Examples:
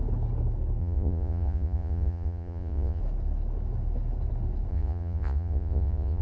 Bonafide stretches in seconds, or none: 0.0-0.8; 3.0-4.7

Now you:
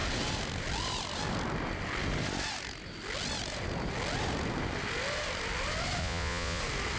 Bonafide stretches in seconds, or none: 0.0-6.0; 6.6-7.0

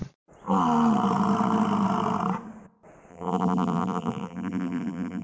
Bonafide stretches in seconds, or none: 0.0-3.1